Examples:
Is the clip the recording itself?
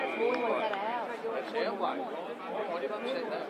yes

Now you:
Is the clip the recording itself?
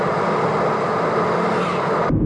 yes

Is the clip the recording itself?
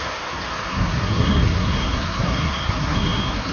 no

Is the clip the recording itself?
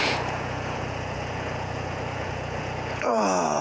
no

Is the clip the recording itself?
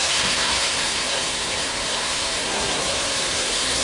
no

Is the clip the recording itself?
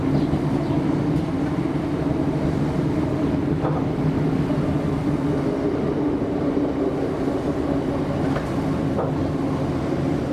yes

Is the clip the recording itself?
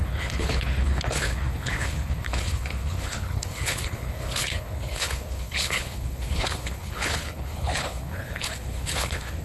no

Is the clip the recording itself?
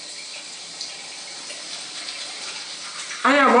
yes